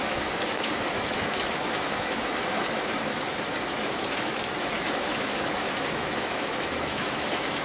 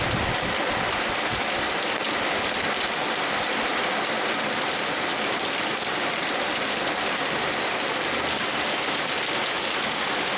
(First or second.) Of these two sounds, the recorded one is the second